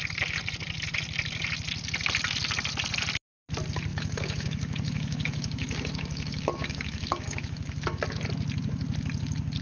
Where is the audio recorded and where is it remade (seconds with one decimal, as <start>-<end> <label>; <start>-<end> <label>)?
0.0-3.9 recorded; 3.9-8.0 remade; 8.0-9.6 recorded

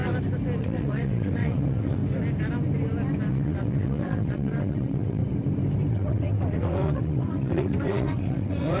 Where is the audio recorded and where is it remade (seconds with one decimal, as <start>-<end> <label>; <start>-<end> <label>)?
0.0-0.6 recorded; 0.6-2.0 remade; 2.0-3.3 recorded; 3.3-5.2 remade; 5.2-5.9 recorded; 5.9-8.8 remade